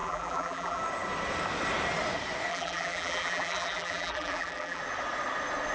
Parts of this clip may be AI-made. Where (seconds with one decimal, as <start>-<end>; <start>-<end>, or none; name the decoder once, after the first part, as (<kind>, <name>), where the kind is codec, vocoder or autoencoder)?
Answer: 0.0-0.8 (vocoder, BigVGAN v2); 2.5-4.8

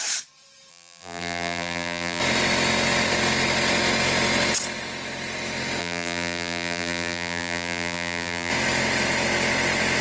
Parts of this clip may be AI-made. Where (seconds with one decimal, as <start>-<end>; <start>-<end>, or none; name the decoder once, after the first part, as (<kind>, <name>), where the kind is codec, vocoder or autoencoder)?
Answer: 0.7-2.2 (vocoder, BigVGAN v2); 5.8-8.5

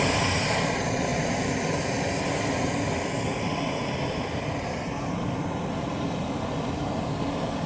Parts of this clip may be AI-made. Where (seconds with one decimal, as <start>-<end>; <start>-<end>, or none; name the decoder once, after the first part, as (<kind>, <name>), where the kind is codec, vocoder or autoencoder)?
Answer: 3.3-3.9 (vocoder, BigVGAN v2)